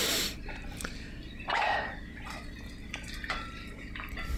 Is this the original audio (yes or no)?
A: no